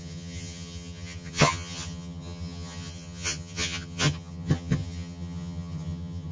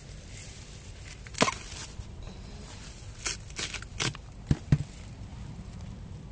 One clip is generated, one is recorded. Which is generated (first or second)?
first